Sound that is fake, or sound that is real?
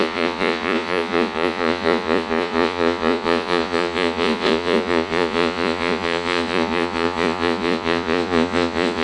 fake